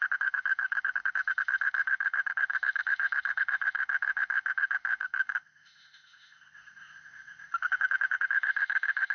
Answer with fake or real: fake